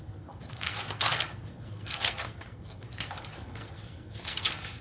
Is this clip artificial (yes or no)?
yes